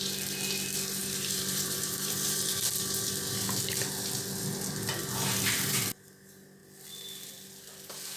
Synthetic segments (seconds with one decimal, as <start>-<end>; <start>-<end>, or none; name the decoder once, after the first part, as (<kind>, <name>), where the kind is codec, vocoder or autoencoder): 1.0-2.8 (vocoder, BigVGAN v2)